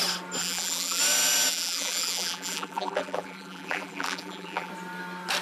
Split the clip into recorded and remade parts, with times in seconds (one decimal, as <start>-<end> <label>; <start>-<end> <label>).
0.0-0.4 recorded; 0.4-1.0 remade; 1.0-1.5 recorded; 1.5-4.7 remade; 4.7-5.4 recorded